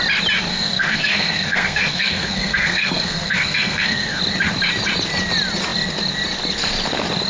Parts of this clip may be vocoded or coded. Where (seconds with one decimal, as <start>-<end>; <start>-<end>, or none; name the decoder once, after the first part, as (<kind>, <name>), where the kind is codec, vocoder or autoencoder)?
0.5-4.2 (codec, SNAC)